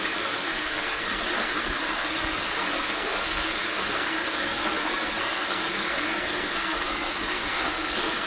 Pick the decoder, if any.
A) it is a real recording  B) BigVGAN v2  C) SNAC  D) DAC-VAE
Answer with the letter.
C